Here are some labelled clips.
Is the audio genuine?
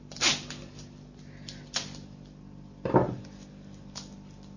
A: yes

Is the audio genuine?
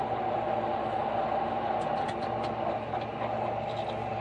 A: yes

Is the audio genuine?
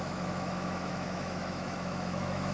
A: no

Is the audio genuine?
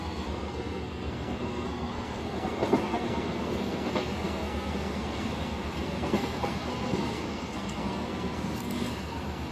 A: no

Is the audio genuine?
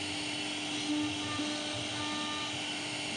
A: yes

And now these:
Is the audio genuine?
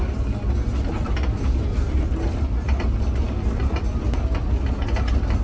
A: yes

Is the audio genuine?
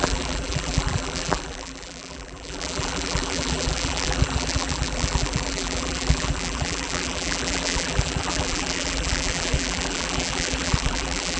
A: no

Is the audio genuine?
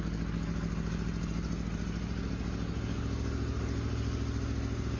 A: yes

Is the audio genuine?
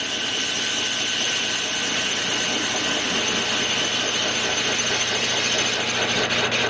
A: yes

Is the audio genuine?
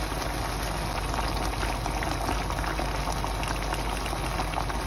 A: yes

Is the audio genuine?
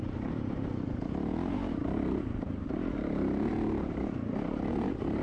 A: no